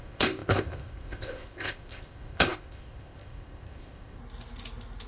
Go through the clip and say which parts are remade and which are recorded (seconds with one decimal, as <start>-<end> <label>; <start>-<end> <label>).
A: 0.0-4.2 remade; 4.2-5.1 recorded